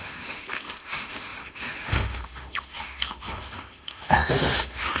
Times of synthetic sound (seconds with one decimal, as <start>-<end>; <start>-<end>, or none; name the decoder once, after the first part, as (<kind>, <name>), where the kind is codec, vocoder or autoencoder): 0.0-5.0 (autoencoder, DAC-VAE)